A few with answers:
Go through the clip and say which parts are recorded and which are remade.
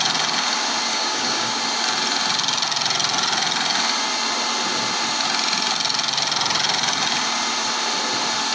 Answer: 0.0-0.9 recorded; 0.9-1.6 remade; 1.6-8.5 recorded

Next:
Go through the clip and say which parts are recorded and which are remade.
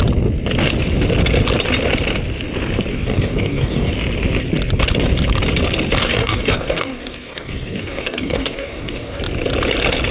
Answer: 0.0-2.9 recorded; 2.9-3.9 remade; 3.9-6.0 recorded; 6.0-9.2 remade; 9.2-10.1 recorded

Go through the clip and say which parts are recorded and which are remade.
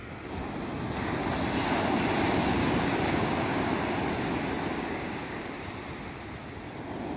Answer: 0.0-2.6 recorded; 2.6-3.7 remade; 3.7-4.7 recorded; 4.7-5.5 remade; 5.5-7.2 recorded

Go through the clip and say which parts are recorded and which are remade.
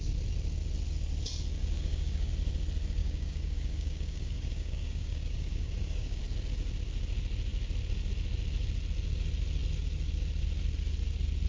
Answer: 0.0-1.6 recorded; 1.6-2.3 remade; 2.3-3.0 recorded; 3.0-6.2 remade; 6.2-11.5 recorded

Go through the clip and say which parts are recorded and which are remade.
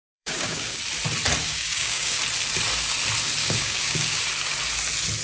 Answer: 0.0-0.8 remade; 0.8-1.4 recorded; 1.4-2.2 remade; 2.2-3.4 recorded; 3.4-4.2 remade; 4.2-5.2 recorded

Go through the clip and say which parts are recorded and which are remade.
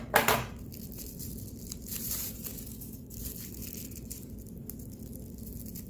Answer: 0.0-2.7 recorded; 2.7-3.2 remade; 3.2-5.9 recorded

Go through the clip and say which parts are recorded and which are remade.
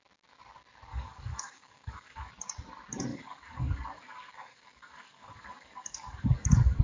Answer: 0.0-0.9 recorded; 0.9-2.3 remade; 2.3-3.1 recorded; 3.1-6.8 remade